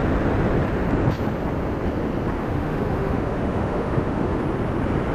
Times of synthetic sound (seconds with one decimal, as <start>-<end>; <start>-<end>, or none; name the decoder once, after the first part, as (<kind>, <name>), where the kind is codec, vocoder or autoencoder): 2.4-4.4 (autoencoder, DAC-VAE)